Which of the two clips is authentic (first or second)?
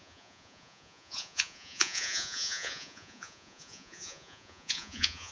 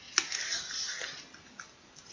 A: second